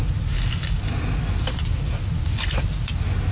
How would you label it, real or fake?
real